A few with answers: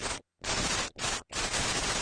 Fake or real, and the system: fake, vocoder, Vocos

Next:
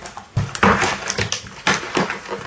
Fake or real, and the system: real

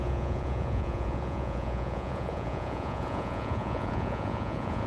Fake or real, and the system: fake, vocoder, Vocos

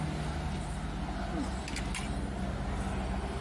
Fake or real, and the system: real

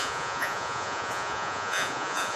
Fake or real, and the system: fake, vocoder, Vocos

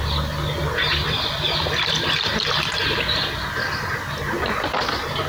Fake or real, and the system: real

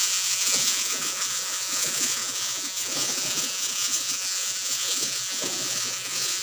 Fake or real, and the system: fake, vocoder, Vocos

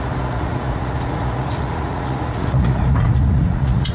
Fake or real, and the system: fake, vocoder, Vocos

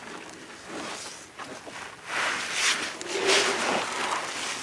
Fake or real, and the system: real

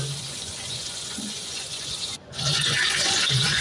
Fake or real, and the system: fake, vocoder, Vocos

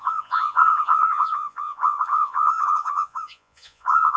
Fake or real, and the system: fake, vocoder, Vocos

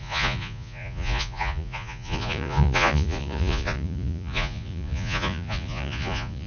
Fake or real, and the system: fake, vocoder, Vocos